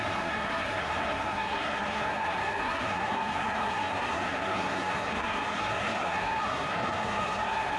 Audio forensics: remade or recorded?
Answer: remade